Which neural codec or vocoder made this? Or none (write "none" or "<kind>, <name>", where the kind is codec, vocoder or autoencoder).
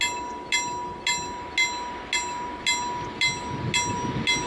none